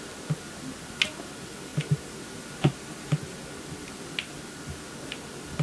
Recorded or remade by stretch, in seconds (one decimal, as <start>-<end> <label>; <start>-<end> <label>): 0.0-5.6 recorded